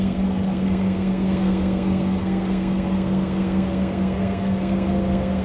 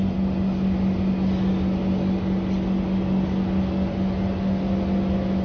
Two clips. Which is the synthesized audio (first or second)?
first